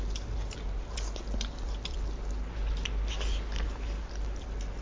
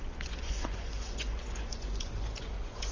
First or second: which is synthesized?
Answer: second